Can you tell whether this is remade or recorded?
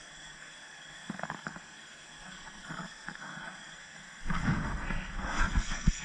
remade